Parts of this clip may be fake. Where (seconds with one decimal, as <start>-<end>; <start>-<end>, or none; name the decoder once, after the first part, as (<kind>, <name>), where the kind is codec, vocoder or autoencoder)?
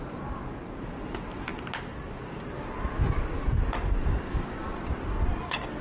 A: none